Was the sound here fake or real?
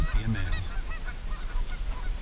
real